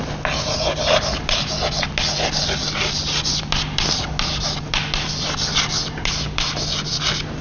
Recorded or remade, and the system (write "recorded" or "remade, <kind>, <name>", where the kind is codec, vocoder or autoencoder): recorded